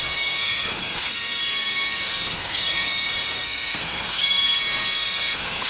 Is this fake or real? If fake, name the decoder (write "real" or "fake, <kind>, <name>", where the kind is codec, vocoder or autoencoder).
fake, codec, SNAC